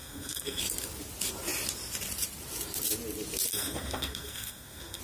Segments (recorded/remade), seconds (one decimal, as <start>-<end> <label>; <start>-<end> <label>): 0.0-0.6 remade; 0.6-3.5 recorded; 3.5-5.0 remade

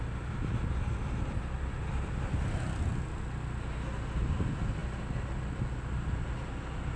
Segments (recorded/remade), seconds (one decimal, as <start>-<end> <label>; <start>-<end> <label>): 0.0-7.0 recorded

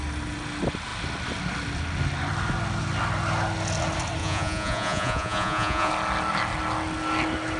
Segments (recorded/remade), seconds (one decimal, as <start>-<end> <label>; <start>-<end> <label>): 0.0-4.2 recorded; 4.2-5.9 remade; 5.9-7.6 recorded

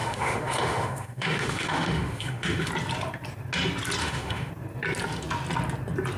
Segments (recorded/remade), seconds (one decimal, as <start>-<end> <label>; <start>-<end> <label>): 0.0-2.7 remade; 2.7-4.0 recorded; 4.0-4.5 remade; 4.5-6.2 recorded

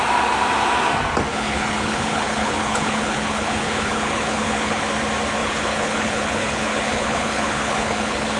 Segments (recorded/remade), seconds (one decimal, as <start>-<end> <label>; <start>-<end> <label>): 0.0-1.3 recorded; 1.3-4.8 remade; 4.8-5.4 recorded; 5.4-8.4 remade

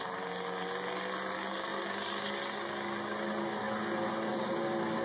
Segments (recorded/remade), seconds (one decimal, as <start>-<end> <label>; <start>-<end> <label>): 0.0-5.0 recorded

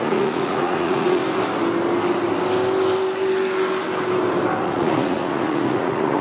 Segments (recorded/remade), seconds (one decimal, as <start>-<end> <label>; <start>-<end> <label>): 0.0-1.2 remade; 1.2-4.6 recorded; 4.6-6.2 remade

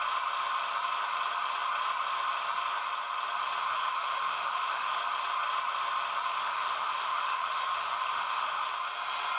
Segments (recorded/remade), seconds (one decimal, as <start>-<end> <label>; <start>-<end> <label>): 0.0-3.6 recorded; 3.6-5.0 remade; 5.0-6.3 recorded; 6.3-8.7 remade; 8.7-9.4 recorded